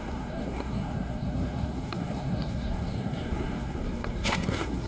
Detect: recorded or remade remade